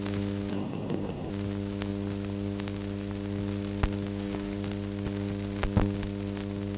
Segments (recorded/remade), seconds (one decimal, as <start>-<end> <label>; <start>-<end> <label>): 0.0-0.5 recorded; 0.5-1.3 remade; 1.3-6.8 recorded

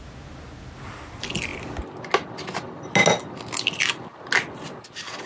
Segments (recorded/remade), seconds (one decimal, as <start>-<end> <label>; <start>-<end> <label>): 0.0-5.3 recorded

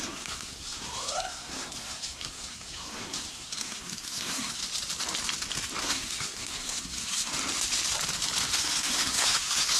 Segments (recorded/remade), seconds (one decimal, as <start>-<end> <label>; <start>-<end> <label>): 0.0-4.6 remade; 4.6-5.8 recorded; 5.8-7.3 remade; 7.3-8.6 recorded; 8.6-9.8 remade

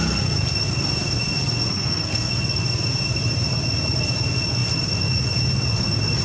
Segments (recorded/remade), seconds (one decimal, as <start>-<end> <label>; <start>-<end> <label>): 0.0-1.7 recorded; 1.7-2.3 remade; 2.3-6.2 recorded

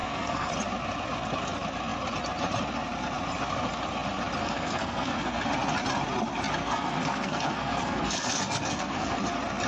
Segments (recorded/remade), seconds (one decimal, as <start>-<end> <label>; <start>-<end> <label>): 0.0-0.5 remade; 0.5-4.4 recorded; 4.4-5.4 remade; 5.4-6.6 recorded; 6.6-9.2 remade; 9.2-9.7 recorded

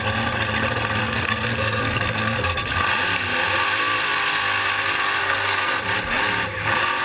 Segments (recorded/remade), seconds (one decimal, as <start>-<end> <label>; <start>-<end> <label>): 0.0-1.0 recorded; 1.0-2.7 remade; 2.7-5.2 recorded; 5.2-5.8 remade; 5.8-7.0 recorded